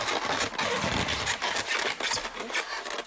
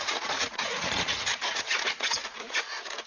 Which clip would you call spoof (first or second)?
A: second